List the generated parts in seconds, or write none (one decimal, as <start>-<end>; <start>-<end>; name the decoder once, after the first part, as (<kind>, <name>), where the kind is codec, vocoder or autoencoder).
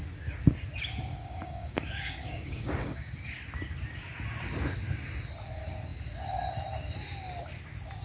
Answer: 1.1-3.0 (codec, DAC)